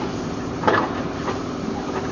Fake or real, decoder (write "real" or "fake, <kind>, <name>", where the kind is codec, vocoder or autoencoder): fake, vocoder, BigVGAN v2